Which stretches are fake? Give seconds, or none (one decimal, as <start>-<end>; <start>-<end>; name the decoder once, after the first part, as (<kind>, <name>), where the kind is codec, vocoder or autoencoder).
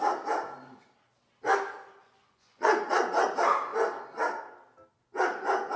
2.0-2.9 (vocoder, Vocos)